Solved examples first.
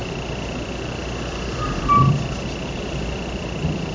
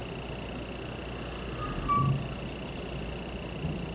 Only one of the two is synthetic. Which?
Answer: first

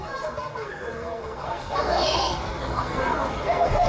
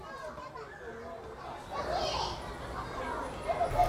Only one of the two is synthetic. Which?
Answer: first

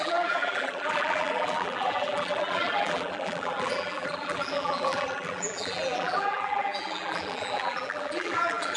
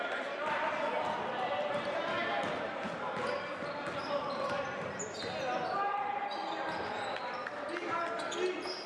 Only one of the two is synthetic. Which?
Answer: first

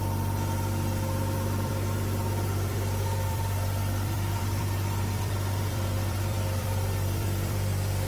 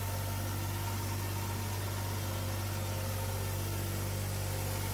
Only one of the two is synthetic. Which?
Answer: first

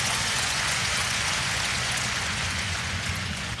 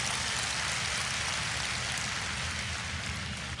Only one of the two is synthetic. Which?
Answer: first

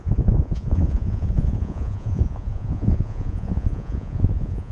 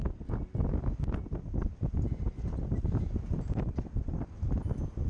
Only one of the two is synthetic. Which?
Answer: first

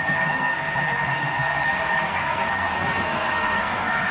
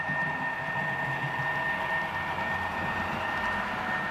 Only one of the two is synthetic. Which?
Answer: first